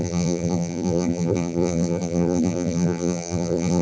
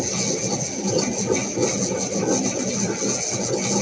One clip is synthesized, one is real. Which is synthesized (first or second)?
first